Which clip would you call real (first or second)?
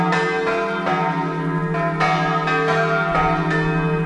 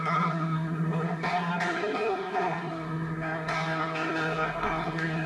first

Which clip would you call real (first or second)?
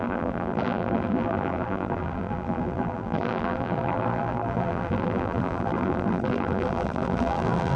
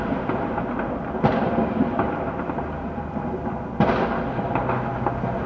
second